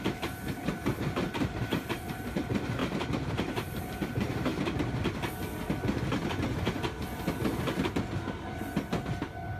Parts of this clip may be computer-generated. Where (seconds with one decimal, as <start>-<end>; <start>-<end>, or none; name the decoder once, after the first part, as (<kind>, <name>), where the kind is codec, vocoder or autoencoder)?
0.0-4.5 (vocoder, BigVGAN v2); 9.0-9.6

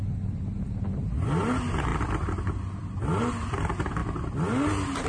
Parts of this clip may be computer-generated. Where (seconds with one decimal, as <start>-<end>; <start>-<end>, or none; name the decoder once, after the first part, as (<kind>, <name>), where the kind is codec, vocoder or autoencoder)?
none